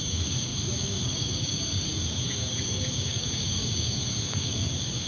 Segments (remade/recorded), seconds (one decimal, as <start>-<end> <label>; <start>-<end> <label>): 0.0-5.1 remade